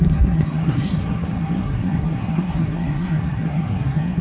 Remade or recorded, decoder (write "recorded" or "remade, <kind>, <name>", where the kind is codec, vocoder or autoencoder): remade, codec, SNAC